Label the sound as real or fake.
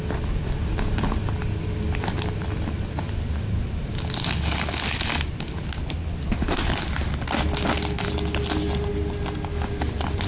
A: real